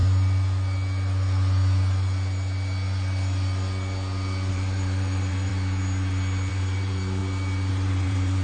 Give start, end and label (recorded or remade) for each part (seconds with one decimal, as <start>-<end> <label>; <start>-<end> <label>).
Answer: 0.0-4.5 recorded; 4.5-5.5 remade; 5.5-6.5 recorded; 6.5-7.2 remade; 7.2-7.7 recorded; 7.7-8.4 remade